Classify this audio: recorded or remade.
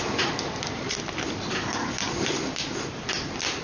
recorded